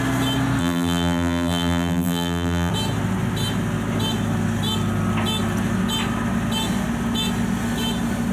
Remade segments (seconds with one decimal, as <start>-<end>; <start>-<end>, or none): 0.6-2.7

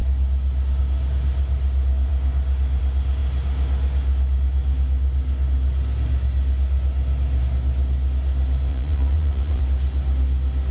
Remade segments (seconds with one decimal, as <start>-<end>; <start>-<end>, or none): 8.7-9.6